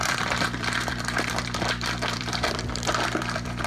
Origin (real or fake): fake